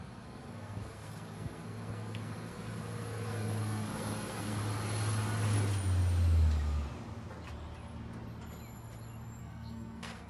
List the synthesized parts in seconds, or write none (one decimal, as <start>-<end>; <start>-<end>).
0.0-4.6; 9.4-10.3